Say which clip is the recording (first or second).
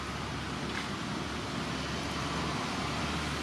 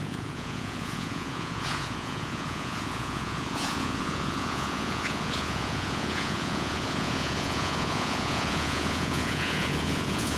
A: first